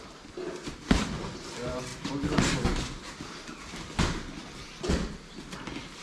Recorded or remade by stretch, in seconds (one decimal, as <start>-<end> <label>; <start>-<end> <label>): 0.0-6.0 recorded